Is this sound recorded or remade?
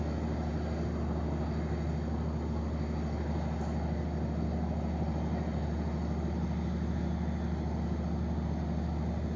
recorded